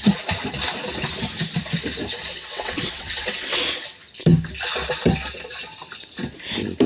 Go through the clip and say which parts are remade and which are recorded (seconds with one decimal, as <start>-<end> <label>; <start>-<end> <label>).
0.0-2.3 recorded; 2.3-3.6 remade; 3.6-6.9 recorded